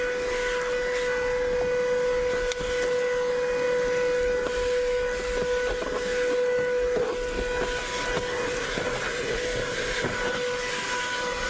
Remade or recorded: recorded